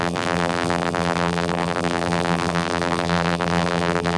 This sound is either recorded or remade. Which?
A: remade